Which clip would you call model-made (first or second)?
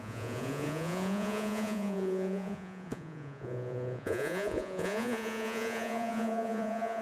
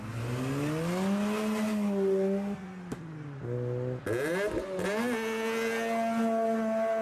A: first